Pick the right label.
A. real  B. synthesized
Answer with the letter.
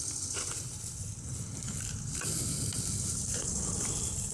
A